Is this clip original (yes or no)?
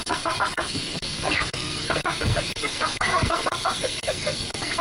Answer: no